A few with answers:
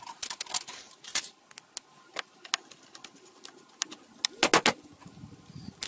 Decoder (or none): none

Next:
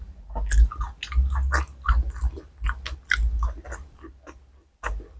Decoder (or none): none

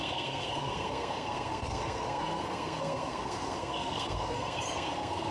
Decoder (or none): codec, SNAC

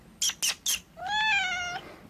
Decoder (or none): none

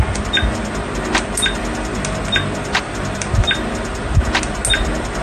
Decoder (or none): none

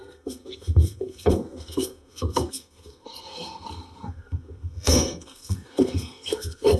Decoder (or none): codec, SNAC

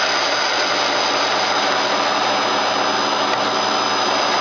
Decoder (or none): none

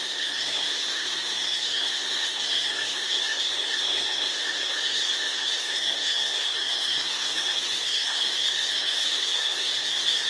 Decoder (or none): codec, SNAC